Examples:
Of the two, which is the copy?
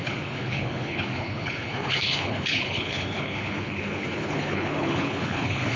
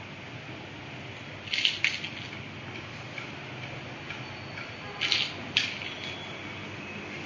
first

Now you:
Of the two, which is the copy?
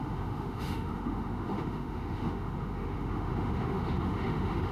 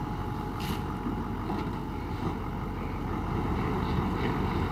first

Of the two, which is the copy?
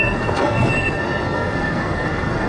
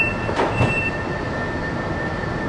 first